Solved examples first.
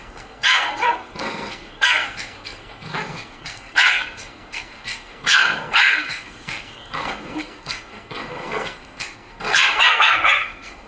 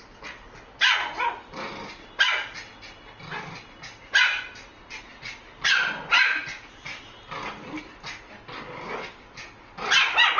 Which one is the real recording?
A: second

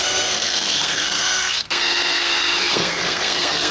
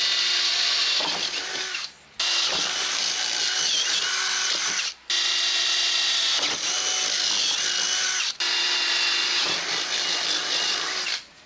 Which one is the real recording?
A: second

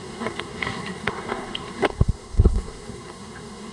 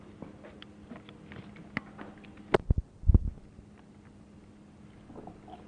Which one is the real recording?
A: second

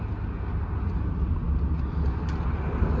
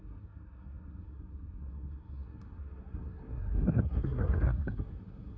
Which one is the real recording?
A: first